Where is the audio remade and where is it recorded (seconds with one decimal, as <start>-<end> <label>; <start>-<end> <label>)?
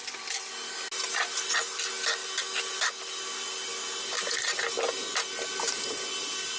0.0-0.5 remade; 0.5-6.6 recorded